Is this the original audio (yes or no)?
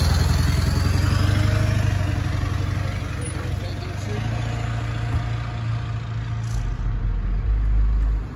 yes